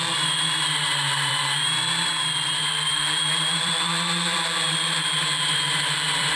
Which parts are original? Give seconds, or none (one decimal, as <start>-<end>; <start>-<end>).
2.1-2.9